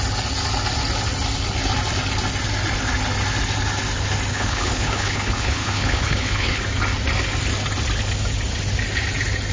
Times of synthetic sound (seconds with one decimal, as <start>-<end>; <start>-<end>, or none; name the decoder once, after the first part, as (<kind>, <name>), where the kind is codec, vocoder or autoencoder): 4.3-6.6 (codec, HILCodec)